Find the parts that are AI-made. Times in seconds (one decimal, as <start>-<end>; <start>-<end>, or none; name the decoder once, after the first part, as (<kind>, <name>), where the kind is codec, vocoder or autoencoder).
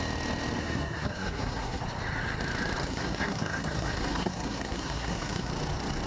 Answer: 0.6-1.8 (codec, SNAC); 2.9-5.5